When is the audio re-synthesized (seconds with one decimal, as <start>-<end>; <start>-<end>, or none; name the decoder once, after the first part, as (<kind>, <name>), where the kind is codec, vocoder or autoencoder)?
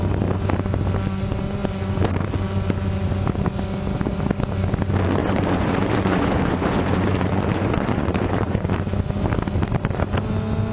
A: 5.2-8.7 (vocoder, Vocos)